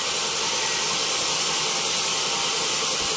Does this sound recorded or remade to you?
recorded